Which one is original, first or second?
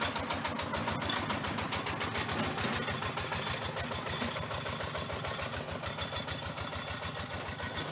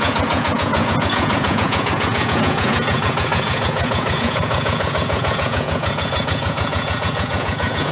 first